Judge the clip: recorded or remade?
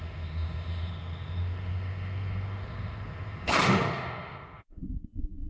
remade